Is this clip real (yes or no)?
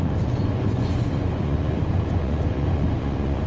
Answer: no